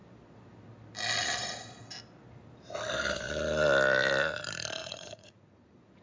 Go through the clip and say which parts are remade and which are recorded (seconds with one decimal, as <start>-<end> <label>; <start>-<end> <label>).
0.0-4.8 recorded; 4.8-6.0 remade